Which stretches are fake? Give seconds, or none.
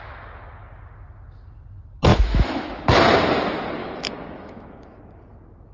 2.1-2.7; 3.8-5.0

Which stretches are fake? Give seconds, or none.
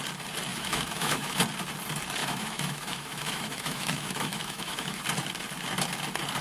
0.5-1.4; 2.2-5.0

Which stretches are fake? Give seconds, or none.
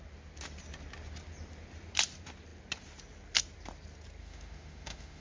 4.2-5.2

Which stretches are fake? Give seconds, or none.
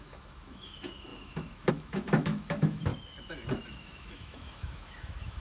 0.0-2.9; 3.6-5.4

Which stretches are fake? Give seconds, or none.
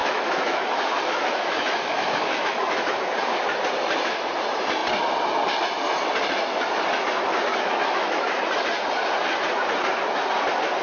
0.0-3.1; 7.5-8.4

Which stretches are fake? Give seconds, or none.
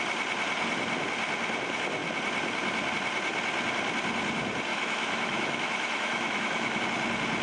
4.7-6.8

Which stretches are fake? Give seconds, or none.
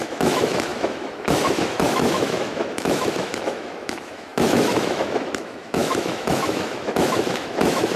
0.0-8.0